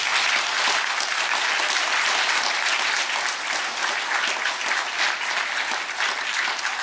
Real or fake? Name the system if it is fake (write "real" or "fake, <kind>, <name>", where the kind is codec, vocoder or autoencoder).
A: real